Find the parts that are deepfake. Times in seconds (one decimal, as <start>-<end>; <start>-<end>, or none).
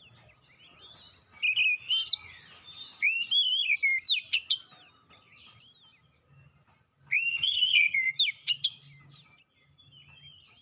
7.3-8.1